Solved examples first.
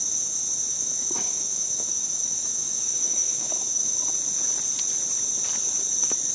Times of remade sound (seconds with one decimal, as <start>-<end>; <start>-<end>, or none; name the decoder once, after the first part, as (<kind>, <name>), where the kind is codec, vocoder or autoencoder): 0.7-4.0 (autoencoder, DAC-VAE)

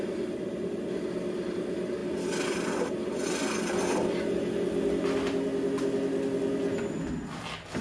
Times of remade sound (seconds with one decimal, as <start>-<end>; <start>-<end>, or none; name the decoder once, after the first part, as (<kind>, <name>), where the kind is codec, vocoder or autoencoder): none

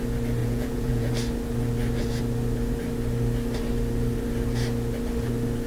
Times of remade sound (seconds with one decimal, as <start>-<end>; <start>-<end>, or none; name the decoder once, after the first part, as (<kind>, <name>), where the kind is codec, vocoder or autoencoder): 0.4-1.1 (vocoder, Vocos)

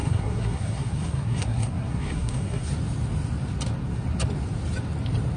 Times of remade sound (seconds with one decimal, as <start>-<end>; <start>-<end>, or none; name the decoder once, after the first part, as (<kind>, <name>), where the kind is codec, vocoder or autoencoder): 0.0-2.7 (codec, SNAC)

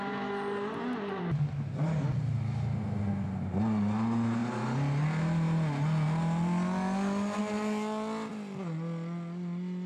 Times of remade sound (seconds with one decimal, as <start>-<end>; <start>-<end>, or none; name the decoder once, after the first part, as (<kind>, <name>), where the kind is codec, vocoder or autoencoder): none

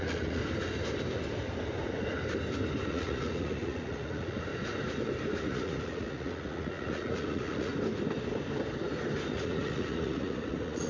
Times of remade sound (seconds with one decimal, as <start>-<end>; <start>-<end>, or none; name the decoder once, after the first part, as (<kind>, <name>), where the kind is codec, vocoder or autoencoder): 0.0-0.4 (vocoder, Vocos); 2.9-4.5; 5.4-7.7; 9.3-10.9